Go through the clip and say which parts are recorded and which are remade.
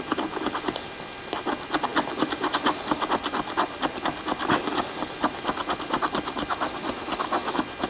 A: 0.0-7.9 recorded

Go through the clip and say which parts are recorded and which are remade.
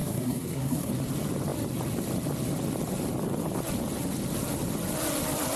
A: 0.0-0.9 remade; 0.9-5.6 recorded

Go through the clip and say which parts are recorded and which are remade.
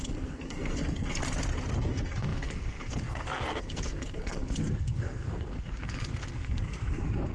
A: 0.0-1.2 remade; 1.2-1.8 recorded; 1.8-7.3 remade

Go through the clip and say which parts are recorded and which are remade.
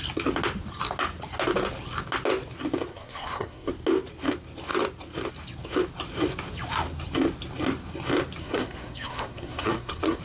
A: 0.0-2.9 recorded; 2.9-3.7 remade; 3.7-8.4 recorded; 8.4-10.2 remade